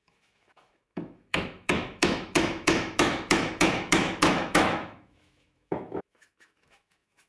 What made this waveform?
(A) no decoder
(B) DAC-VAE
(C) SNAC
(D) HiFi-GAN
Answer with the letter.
B